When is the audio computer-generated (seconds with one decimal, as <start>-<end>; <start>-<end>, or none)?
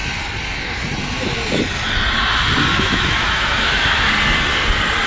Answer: 2.7-4.1